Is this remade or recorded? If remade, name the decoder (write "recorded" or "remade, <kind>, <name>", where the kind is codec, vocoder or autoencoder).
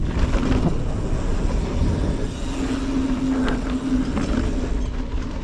recorded